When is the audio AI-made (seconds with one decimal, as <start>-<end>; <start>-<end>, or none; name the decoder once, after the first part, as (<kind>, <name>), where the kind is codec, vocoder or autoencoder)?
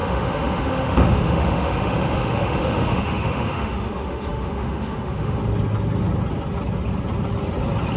0.0-5.4 (autoencoder, DAC-VAE)